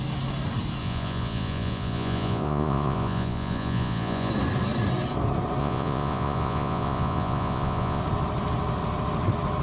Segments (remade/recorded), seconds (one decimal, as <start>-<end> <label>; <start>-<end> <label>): 0.0-0.8 recorded; 0.8-4.3 remade; 4.3-5.6 recorded; 5.6-8.0 remade; 8.0-9.6 recorded